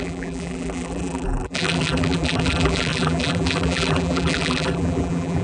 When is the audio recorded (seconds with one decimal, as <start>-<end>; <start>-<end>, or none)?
none